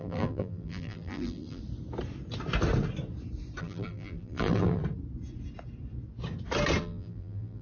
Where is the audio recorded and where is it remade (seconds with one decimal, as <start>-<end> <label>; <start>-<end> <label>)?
0.0-1.6 remade; 1.6-3.6 recorded; 3.6-4.8 remade; 4.8-6.8 recorded; 6.8-7.6 remade